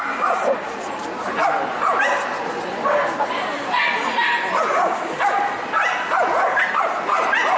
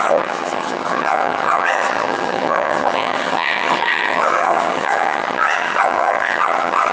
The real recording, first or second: first